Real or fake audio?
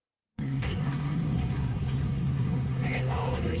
fake